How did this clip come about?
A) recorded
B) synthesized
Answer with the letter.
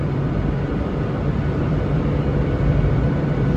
B